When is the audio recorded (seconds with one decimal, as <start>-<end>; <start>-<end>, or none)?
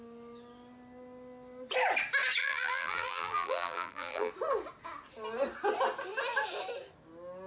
0.0-2.4; 4.3-7.5